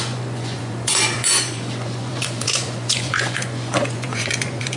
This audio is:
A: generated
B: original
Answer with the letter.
A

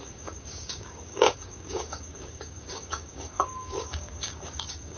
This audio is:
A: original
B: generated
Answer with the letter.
B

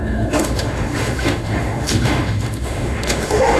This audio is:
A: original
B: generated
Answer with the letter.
B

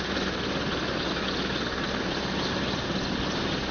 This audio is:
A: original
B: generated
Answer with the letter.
A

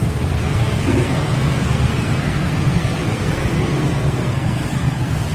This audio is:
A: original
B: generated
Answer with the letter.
B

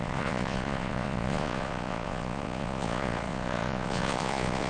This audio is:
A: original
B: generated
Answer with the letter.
B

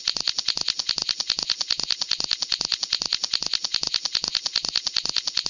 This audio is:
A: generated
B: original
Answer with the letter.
B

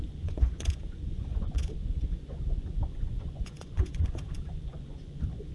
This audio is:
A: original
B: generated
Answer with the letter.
B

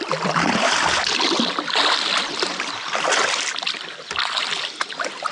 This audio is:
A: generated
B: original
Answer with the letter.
B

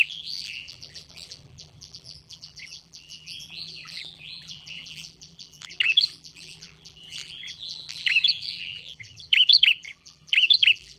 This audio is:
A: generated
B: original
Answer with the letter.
A